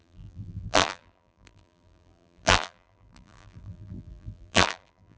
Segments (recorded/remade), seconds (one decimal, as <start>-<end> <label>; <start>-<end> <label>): 0.0-5.2 remade